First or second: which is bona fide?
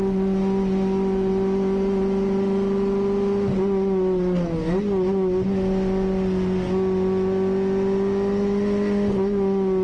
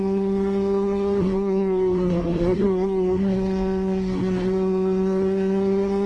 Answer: first